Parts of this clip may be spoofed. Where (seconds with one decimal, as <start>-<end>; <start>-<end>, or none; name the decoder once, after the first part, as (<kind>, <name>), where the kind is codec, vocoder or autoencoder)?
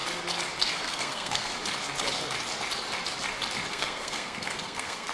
0.6-1.5 (codec, SNAC); 3.7-5.1